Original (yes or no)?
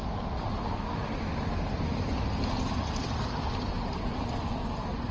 yes